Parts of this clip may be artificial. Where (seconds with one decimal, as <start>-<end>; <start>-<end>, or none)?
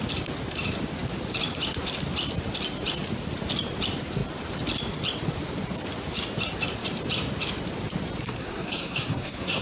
8.2-9.6